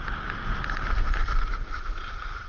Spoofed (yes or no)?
yes